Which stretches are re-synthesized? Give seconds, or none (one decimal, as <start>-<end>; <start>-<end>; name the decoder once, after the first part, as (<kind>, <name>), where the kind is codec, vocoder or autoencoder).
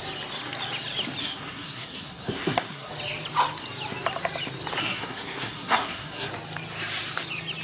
1.2-2.9 (codec, SNAC); 4.8-6.3